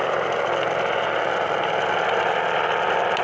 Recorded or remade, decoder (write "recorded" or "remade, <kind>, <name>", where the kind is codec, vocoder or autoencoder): recorded